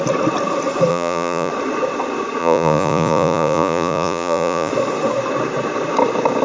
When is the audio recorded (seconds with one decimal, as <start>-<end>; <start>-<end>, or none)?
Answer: 0.0-0.9; 1.5-2.4; 4.7-6.4